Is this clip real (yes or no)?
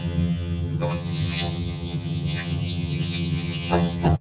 no